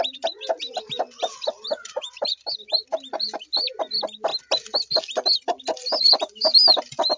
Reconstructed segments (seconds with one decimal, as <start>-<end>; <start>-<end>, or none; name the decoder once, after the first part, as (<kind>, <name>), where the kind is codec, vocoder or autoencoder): none